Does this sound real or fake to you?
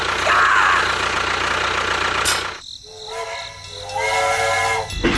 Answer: real